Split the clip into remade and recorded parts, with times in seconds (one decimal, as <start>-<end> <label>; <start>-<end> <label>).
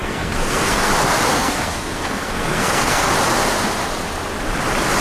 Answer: 0.0-0.9 remade; 0.9-1.3 recorded; 1.3-3.1 remade; 3.1-5.0 recorded